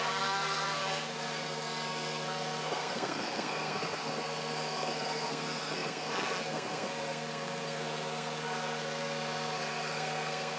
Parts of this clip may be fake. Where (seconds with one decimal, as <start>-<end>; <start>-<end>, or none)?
0.0-10.6